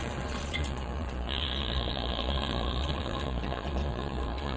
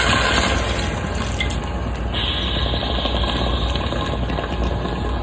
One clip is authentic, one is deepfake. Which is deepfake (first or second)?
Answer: first